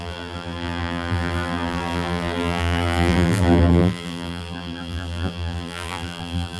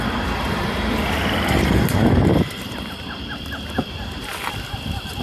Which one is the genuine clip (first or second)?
second